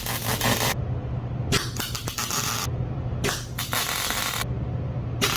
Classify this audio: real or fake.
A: real